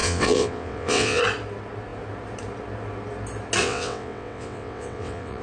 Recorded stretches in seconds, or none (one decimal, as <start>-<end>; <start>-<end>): 1.2-3.6